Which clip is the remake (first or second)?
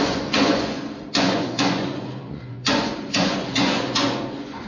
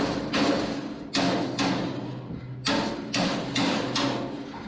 first